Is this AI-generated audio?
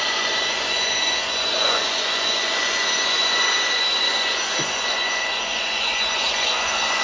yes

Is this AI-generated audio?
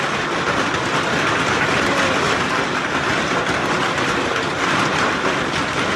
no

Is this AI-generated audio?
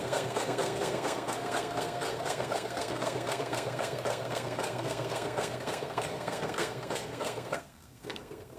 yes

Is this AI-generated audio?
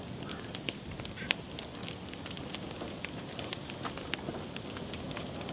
no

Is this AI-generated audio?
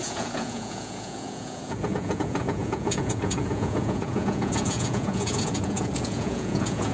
yes